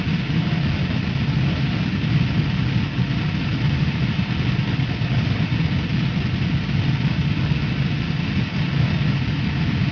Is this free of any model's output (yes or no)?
yes